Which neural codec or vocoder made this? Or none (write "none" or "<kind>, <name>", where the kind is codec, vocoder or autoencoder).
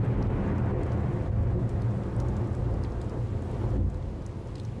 none